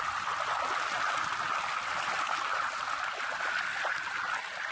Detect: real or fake real